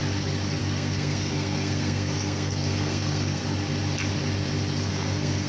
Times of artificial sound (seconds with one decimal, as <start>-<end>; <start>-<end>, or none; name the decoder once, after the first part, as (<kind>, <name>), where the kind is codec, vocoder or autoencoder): 0.6-3.4 (codec, SNAC); 4.9-5.5